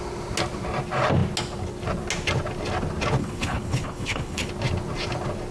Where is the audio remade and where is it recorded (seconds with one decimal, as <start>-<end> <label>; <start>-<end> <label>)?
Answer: 0.0-3.2 recorded; 3.2-4.5 remade; 4.5-5.5 recorded